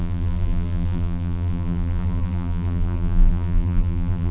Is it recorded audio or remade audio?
remade